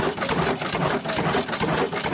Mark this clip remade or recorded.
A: recorded